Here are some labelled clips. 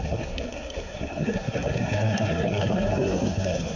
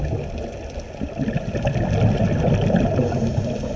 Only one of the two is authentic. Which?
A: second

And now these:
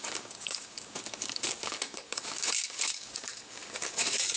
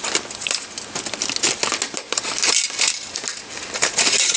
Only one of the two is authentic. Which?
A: second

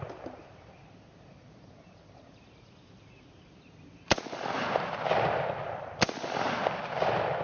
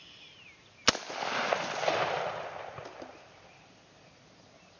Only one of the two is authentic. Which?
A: second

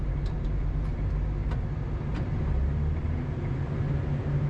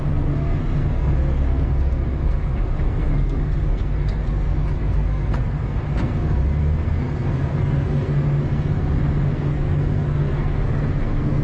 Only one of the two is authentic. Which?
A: first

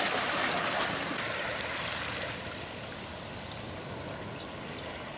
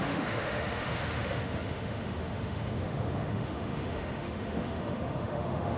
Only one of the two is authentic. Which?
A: first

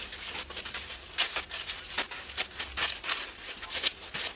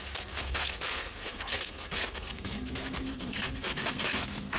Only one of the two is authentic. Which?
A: first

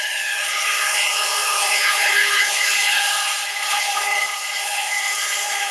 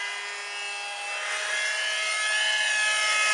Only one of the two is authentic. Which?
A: second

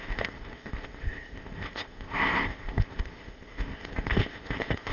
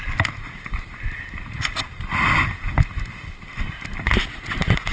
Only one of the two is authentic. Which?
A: second